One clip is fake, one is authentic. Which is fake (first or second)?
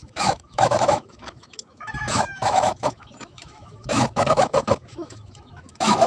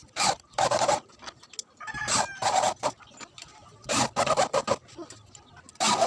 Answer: first